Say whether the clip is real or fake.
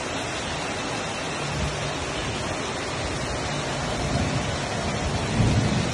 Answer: real